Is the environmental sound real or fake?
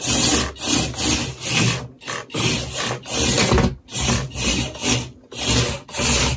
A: real